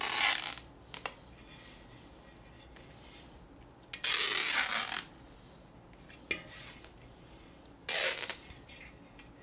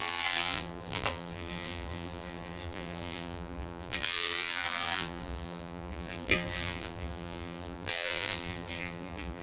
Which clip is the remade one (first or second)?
second